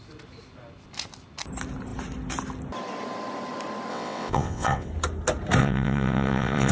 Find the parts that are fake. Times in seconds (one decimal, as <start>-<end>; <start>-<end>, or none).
3.9-4.9; 5.6-6.7